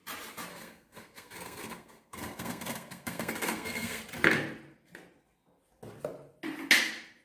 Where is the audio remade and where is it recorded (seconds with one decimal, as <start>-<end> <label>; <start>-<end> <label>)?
0.0-0.5 recorded; 0.5-4.0 remade; 4.0-7.2 recorded